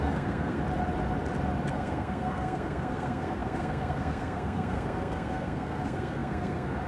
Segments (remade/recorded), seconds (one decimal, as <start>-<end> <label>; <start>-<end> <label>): 0.0-0.6 remade; 0.6-1.7 recorded; 1.7-6.9 remade